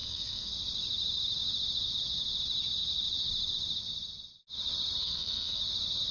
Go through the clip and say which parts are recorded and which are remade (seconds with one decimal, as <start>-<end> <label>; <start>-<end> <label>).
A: 0.0-0.5 remade; 0.5-5.0 recorded; 5.0-5.6 remade; 5.6-6.1 recorded